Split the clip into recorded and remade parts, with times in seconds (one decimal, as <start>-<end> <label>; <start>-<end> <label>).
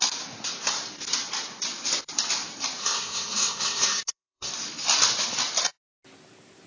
0.0-2.8 recorded; 2.8-4.5 remade; 4.5-6.7 recorded